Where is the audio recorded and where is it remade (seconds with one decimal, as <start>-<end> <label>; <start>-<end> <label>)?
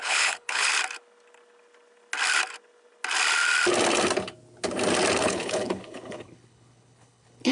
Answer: 0.0-0.7 remade; 0.7-5.2 recorded; 5.2-7.5 remade